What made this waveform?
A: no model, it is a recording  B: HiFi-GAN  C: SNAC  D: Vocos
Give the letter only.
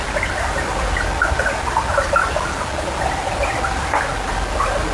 A